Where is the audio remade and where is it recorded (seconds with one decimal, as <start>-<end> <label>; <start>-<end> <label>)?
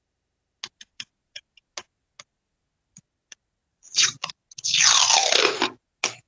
0.0-3.7 recorded; 3.7-4.4 remade; 4.4-6.3 recorded